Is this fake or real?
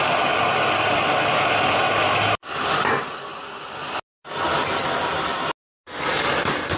real